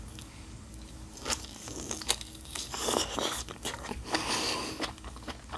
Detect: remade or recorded remade